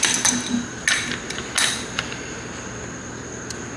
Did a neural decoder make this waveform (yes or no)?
no